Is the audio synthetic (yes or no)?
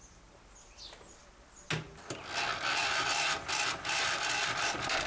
no